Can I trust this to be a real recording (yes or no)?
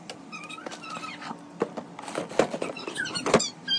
yes